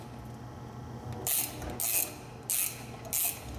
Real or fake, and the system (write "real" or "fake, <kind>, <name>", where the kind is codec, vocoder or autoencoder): real